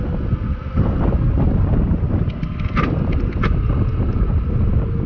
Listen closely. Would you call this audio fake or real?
real